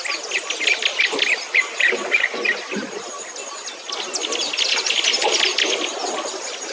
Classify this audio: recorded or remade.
recorded